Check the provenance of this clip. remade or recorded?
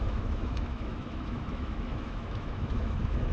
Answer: remade